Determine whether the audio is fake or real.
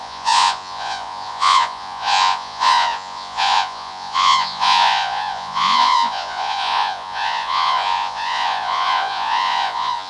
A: fake